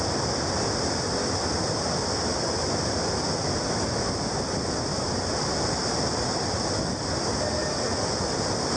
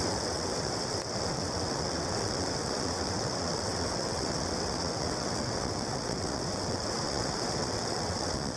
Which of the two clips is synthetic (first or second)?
second